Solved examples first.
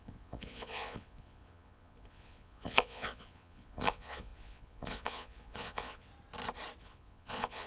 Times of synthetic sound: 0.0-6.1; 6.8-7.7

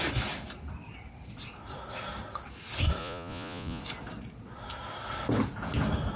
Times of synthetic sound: 3.0-3.8

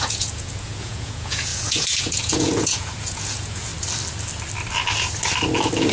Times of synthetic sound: 0.0-3.7

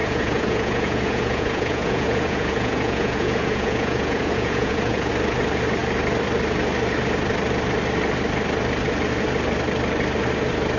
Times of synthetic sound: 0.0-5.1